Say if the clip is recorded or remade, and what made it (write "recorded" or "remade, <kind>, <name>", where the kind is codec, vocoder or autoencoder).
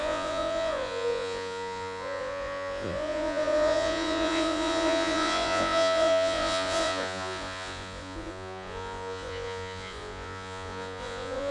remade, vocoder, Vocos